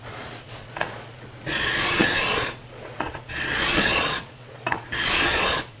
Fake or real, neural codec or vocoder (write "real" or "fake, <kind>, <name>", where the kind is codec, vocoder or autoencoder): fake, vocoder, Vocos